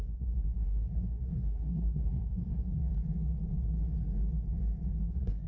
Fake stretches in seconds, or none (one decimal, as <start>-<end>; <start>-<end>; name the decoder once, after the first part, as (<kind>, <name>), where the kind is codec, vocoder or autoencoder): 0.0-2.8 (codec, SNAC); 5.1-5.5